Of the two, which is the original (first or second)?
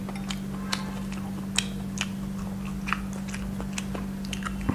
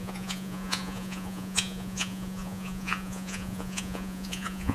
first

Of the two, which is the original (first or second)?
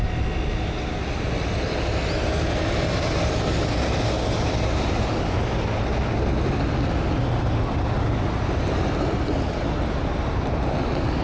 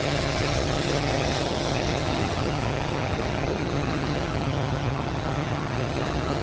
first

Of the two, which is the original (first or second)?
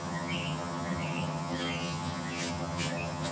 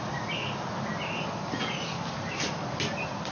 second